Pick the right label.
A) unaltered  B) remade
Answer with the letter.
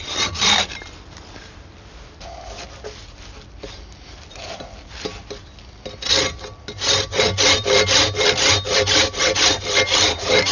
A